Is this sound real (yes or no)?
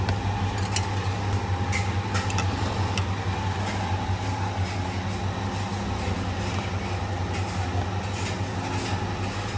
yes